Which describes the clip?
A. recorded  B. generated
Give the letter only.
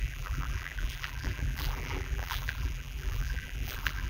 B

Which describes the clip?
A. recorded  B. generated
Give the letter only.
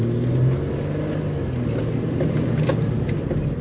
A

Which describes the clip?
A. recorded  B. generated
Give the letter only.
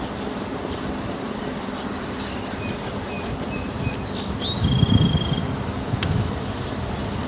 A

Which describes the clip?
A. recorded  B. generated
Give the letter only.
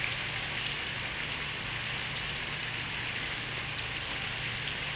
A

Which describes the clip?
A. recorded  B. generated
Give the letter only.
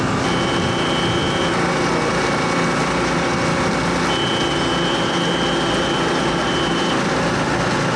A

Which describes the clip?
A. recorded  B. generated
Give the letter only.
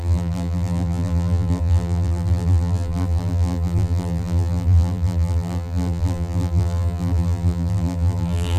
B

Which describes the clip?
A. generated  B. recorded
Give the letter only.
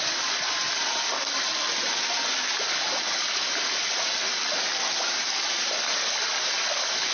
B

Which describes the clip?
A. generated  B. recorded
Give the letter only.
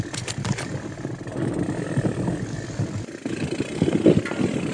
B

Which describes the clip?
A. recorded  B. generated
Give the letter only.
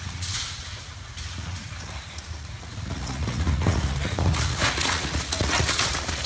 B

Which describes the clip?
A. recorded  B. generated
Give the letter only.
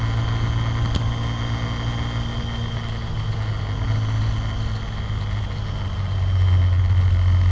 A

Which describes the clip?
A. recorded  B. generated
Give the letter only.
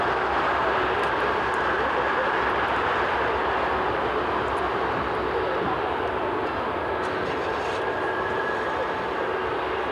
A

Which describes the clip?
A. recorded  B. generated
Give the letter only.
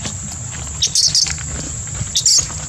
A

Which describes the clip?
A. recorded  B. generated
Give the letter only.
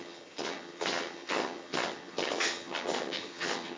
B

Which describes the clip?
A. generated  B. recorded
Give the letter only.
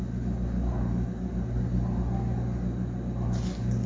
B